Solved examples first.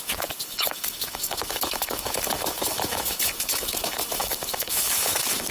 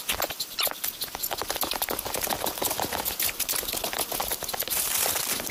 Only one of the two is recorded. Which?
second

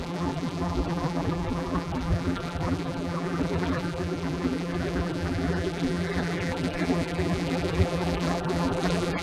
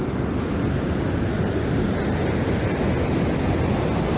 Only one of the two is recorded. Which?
second